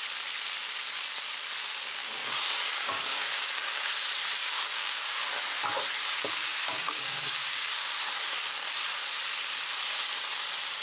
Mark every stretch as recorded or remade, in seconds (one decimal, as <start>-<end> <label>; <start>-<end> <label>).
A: 0.0-2.0 recorded; 2.0-3.9 remade; 3.9-4.4 recorded; 4.4-5.2 remade; 5.2-6.5 recorded; 6.5-8.1 remade; 8.1-10.8 recorded

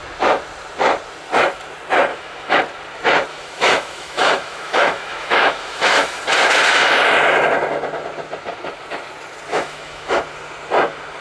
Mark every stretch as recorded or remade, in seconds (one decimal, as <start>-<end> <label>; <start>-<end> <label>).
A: 0.0-2.1 recorded; 2.1-2.6 remade; 2.6-3.3 recorded; 3.3-6.2 remade; 6.2-9.5 recorded; 9.5-10.2 remade; 10.2-11.2 recorded

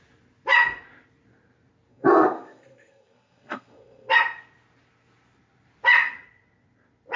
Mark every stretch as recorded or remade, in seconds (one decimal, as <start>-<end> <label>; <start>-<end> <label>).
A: 0.0-1.9 recorded; 1.9-4.1 remade; 4.1-7.2 recorded

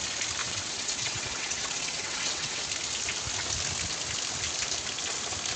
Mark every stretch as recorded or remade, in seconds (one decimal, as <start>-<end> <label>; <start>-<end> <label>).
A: 0.0-0.4 recorded; 0.4-2.6 remade; 2.6-5.6 recorded

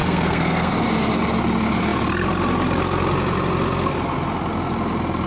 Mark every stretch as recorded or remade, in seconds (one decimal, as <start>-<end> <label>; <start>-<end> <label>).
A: 0.0-0.7 remade; 0.7-5.3 recorded

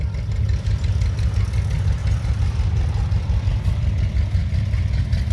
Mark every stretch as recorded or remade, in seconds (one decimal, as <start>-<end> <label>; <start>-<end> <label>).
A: 0.0-5.3 recorded

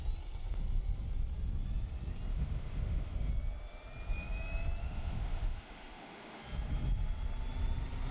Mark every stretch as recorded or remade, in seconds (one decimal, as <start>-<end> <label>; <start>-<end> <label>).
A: 0.0-2.3 recorded; 2.3-3.3 remade; 3.3-4.8 recorded; 4.8-6.4 remade; 6.4-8.1 recorded